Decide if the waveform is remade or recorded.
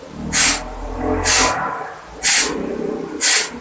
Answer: recorded